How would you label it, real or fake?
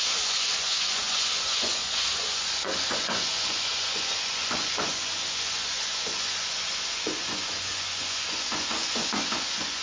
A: fake